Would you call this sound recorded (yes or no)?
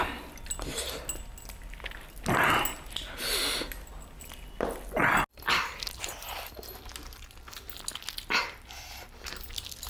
yes